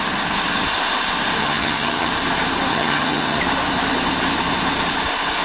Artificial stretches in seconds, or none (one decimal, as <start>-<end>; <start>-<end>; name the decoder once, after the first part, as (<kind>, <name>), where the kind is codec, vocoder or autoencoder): 1.4-2.1 (vocoder, HiFi-GAN); 2.7-3.4

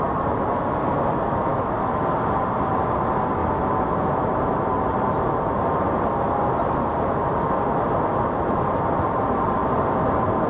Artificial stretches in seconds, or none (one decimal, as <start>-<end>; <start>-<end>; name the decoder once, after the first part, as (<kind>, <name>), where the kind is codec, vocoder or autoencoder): 1.5-2.0 (autoencoder, DAC-VAE); 3.4-4.2

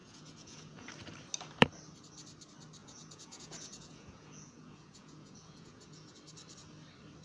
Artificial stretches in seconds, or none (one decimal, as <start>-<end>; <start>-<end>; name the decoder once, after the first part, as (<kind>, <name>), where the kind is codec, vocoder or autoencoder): 0.0-0.9 (vocoder, Vocos); 2.8-6.2

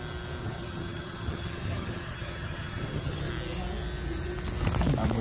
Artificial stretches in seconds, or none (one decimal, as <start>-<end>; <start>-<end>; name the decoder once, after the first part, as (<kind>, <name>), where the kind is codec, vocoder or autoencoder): 0.4-3.3 (vocoder, HiFi-GAN)

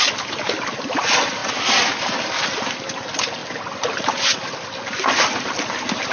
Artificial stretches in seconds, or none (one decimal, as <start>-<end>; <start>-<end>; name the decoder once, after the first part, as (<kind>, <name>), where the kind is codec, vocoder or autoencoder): none

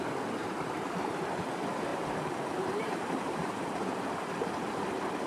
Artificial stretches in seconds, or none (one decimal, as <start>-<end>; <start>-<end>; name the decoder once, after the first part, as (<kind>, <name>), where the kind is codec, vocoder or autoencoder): 0.4-1.2 (vocoder, BigVGAN v2); 1.9-4.3

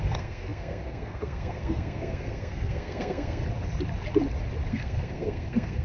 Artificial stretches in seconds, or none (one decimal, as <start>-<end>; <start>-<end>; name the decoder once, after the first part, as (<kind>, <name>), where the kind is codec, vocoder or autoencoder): 0.0-3.4 (codec, SNAC); 4.7-5.8

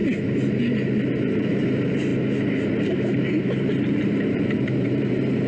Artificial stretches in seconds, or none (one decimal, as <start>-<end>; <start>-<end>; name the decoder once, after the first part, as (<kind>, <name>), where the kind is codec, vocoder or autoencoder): 1.1-2.1 (vocoder, BigVGAN v2); 2.8-5.5